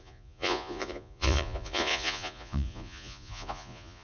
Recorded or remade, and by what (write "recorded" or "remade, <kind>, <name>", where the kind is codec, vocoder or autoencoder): remade, vocoder, Vocos